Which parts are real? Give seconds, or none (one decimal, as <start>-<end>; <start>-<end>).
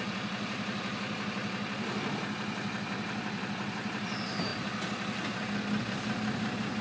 0.0-6.8